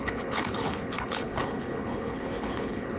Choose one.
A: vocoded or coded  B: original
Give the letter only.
A